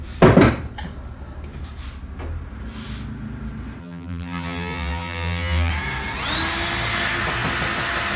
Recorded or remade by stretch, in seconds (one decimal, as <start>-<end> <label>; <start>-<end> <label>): 0.0-3.8 recorded; 3.8-5.7 remade; 5.7-8.2 recorded